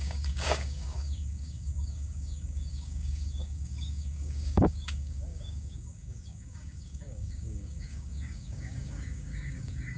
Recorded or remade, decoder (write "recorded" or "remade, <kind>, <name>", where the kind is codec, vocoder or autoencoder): remade, codec, DAC